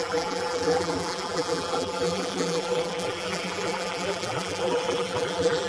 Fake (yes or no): yes